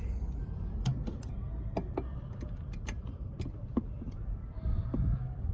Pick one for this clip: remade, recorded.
recorded